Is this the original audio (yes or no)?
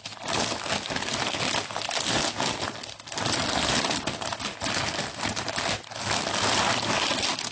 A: yes